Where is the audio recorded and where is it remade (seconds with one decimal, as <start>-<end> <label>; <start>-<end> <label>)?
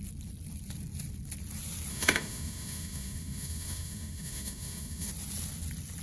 0.0-1.9 recorded; 1.9-5.1 remade; 5.1-6.0 recorded